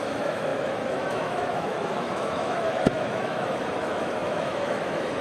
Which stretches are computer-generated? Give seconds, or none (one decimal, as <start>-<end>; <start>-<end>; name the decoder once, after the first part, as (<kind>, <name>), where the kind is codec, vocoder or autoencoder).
0.0-5.2 (autoencoder, DAC-VAE)

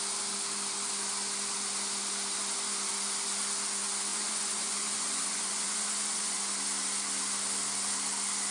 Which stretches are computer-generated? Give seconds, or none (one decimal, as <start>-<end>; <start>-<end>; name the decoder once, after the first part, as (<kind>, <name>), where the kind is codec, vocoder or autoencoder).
4.1-6.4 (vocoder, Vocos)

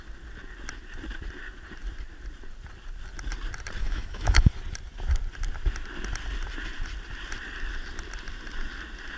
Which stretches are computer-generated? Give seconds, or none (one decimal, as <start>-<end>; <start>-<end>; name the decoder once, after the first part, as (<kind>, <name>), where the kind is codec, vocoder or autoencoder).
3.8-4.5 (autoencoder, DAC-VAE)